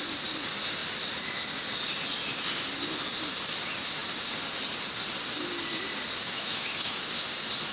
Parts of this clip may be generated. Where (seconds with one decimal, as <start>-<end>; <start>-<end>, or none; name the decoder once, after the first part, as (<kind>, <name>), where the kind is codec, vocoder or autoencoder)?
6.2-7.0 (autoencoder, DAC-VAE)